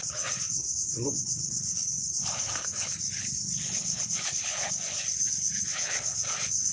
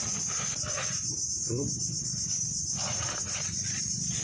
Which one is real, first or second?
second